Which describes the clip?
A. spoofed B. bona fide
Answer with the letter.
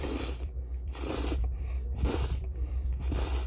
A